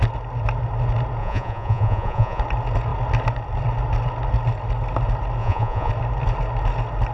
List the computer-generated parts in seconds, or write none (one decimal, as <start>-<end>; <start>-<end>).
1.2-2.4; 5.4-5.9